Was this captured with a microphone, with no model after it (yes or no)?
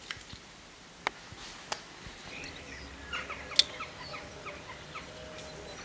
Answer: yes